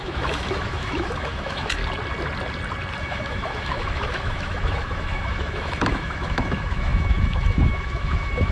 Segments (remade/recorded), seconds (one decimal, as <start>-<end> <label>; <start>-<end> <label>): 0.0-1.8 remade; 1.8-3.0 recorded; 3.0-8.5 remade

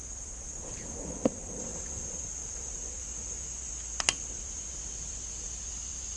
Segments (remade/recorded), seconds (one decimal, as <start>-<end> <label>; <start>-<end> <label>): 0.0-6.2 recorded

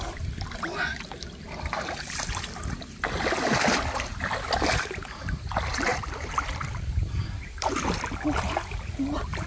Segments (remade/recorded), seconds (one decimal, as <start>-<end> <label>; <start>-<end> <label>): 0.0-9.5 recorded

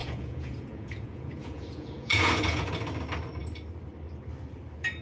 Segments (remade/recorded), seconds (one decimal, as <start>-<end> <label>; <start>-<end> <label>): 0.0-2.7 remade; 2.7-5.0 recorded

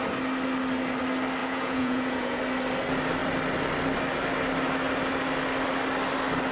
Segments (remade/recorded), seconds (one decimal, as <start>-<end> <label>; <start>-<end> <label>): 0.0-1.4 recorded; 1.4-2.4 remade; 2.4-6.5 recorded